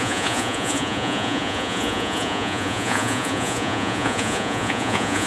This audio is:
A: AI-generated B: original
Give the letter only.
A